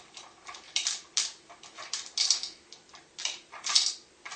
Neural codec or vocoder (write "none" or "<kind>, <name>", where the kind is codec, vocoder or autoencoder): vocoder, BigVGAN v2